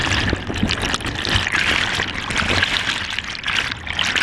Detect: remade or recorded recorded